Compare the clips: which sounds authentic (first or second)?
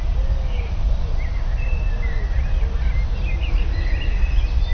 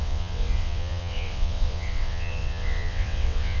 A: first